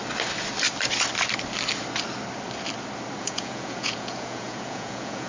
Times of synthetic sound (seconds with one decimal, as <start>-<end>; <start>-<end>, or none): 3.2-5.3